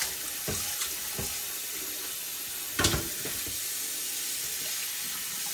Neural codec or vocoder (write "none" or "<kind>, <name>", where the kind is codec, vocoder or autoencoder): none